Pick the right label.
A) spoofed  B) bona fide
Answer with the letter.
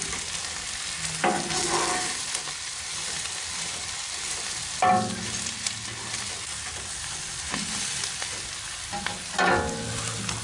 B